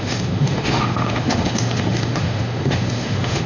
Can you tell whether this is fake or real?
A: fake